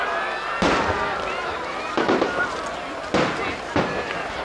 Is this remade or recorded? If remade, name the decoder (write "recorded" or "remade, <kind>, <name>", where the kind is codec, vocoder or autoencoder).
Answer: recorded